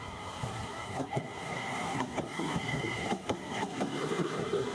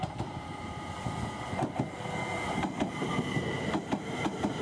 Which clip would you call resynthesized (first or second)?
first